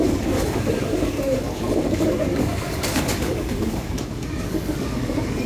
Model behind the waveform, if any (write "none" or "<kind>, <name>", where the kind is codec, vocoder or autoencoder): codec, DAC